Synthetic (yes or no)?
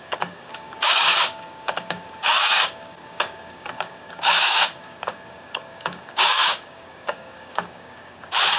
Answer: yes